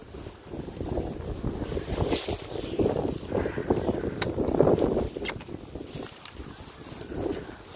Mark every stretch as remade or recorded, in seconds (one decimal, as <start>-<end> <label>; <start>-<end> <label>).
0.0-7.8 recorded